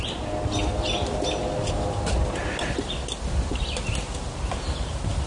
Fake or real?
real